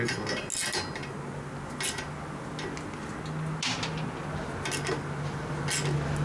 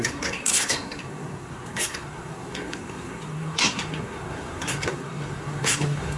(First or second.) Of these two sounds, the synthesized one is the second